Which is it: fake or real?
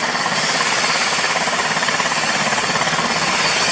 real